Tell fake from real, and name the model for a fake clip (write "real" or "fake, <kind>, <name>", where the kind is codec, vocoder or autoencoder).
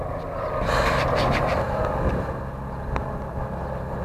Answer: real